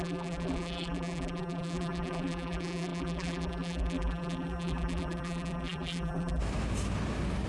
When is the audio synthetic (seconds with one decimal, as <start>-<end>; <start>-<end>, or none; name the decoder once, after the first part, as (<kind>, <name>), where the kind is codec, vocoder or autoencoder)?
0.0-6.4 (vocoder, BigVGAN v2)